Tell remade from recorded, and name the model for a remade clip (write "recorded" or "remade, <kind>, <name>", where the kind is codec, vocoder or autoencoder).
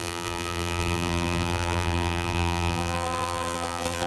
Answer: remade, vocoder, BigVGAN v2